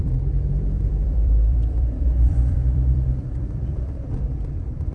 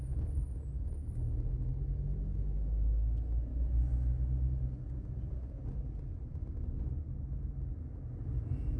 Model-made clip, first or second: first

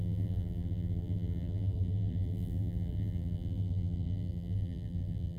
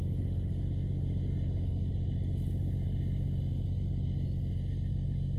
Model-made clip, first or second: first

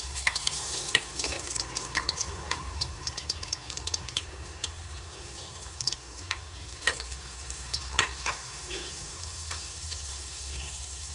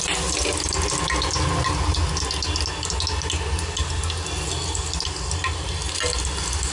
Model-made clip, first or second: first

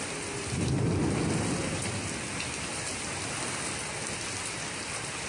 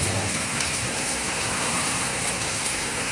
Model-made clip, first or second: second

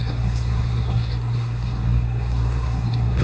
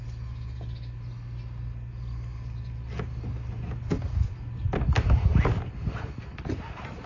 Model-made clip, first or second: first